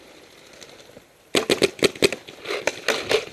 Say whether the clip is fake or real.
real